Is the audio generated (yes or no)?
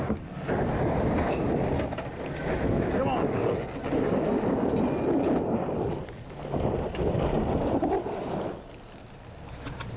no